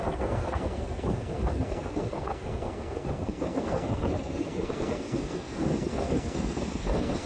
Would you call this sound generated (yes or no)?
yes